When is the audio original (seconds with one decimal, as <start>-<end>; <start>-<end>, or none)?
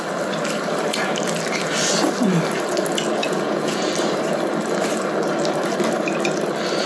0.0-3.2; 3.9-6.9